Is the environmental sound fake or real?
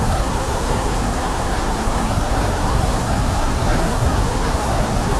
fake